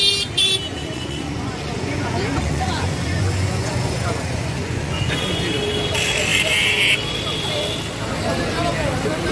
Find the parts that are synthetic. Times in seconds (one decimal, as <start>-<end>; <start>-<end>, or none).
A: 0.7-5.4